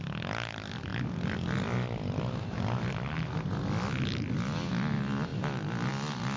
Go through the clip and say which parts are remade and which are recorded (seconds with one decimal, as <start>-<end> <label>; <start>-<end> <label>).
0.0-6.4 recorded